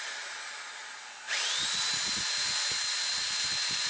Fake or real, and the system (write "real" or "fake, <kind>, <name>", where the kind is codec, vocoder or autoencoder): real